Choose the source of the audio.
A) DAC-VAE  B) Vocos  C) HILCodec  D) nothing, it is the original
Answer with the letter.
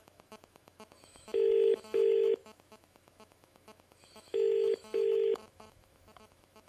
A